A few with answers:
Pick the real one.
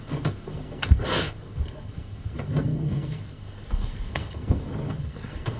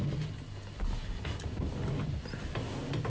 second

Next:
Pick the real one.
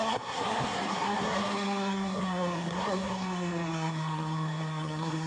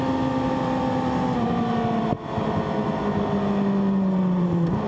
second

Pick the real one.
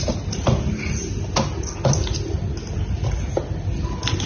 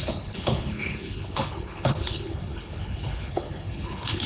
first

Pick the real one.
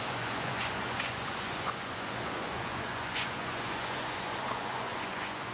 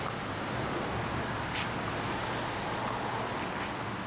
second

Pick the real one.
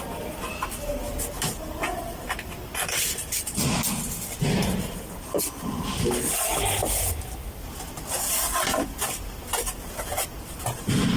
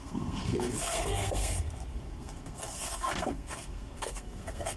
first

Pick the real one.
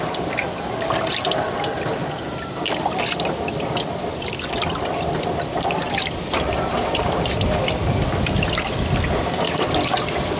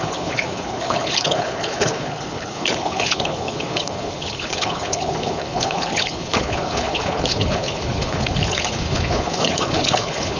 first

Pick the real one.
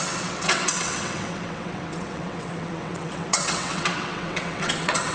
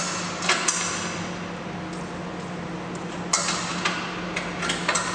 second